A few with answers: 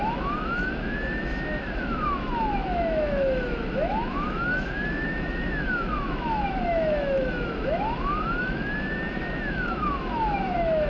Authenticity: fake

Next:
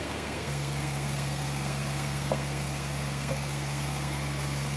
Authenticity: fake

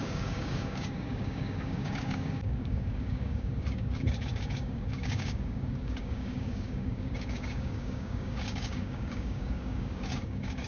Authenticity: fake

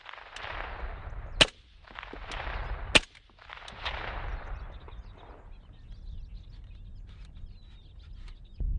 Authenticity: real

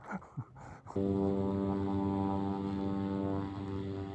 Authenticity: real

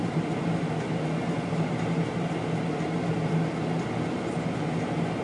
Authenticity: real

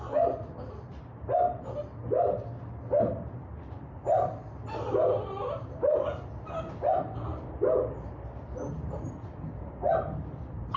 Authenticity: real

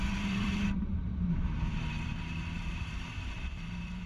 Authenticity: fake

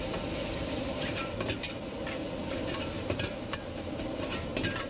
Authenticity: real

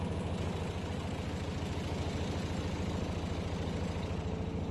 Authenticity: real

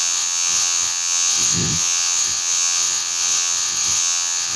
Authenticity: fake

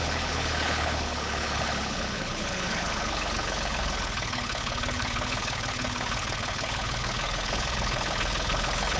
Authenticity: fake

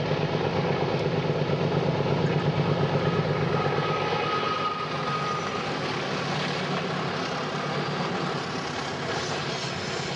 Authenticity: real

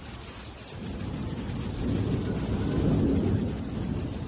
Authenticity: real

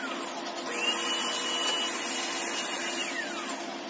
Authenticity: real